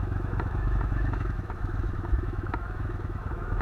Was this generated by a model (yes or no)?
yes